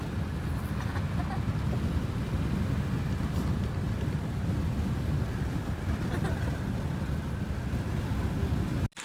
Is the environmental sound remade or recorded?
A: recorded